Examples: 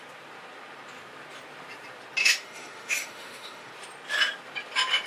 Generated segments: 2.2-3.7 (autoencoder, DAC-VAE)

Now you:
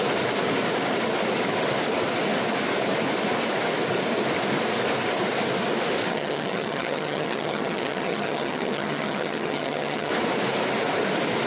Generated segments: 6.1-10.1 (vocoder, HiFi-GAN)